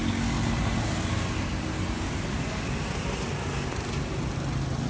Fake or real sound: real